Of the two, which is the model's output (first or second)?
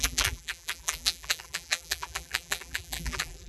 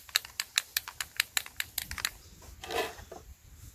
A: first